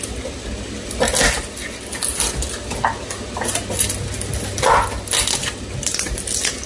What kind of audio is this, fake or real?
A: real